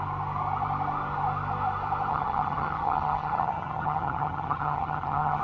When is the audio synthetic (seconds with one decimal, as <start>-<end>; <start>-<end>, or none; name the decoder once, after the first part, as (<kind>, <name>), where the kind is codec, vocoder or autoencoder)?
2.1-5.4 (vocoder, HiFi-GAN)